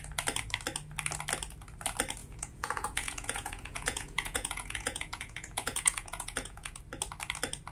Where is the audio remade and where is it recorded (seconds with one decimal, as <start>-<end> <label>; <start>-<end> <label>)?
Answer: 0.0-2.2 recorded; 2.2-6.8 remade; 6.8-7.7 recorded